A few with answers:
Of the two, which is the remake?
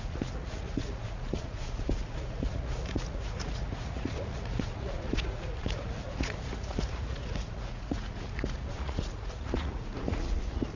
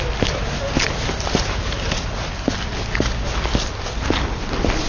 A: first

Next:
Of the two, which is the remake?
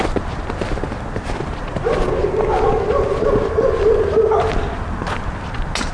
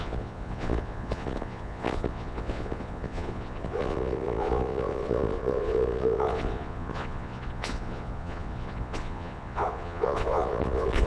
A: second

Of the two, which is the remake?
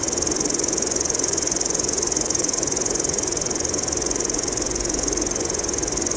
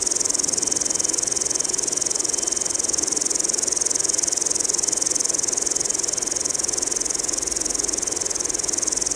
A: first